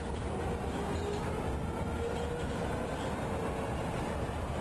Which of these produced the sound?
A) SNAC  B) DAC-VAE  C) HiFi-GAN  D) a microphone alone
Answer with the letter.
D